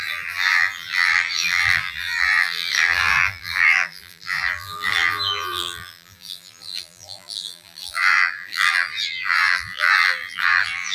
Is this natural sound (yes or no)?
no